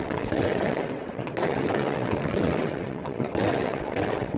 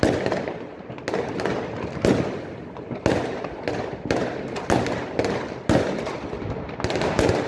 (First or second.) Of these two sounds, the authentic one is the second